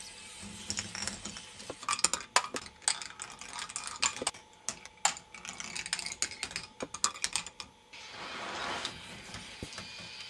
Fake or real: real